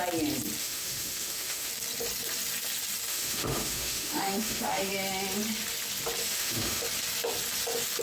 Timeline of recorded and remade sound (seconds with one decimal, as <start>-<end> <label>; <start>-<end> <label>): 0.0-0.6 recorded; 0.6-1.7 remade; 1.7-3.1 recorded; 3.1-4.9 remade; 4.9-6.3 recorded; 6.3-6.8 remade; 6.8-8.0 recorded